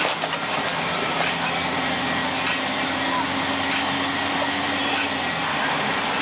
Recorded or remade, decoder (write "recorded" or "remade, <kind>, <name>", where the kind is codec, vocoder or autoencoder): recorded